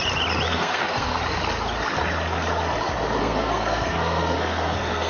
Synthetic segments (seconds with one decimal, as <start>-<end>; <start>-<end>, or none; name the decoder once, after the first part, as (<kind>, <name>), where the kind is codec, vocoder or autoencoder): 0.5-1.2 (codec, SNAC); 3.2-5.1